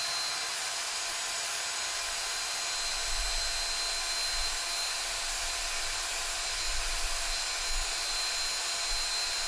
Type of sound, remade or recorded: recorded